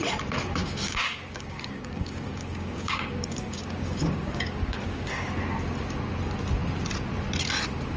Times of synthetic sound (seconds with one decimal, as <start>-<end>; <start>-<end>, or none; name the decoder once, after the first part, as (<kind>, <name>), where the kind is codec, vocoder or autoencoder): 0.6-5.4 (codec, DAC)

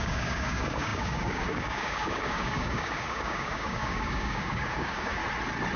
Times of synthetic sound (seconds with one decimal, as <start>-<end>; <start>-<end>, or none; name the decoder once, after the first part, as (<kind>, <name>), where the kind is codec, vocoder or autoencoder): 0.0-5.2 (codec, DAC)

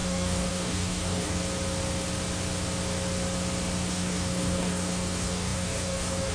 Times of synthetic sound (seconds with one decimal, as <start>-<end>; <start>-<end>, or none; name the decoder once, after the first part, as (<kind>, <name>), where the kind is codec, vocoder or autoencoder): 0.0-1.4 (codec, DAC); 3.9-6.3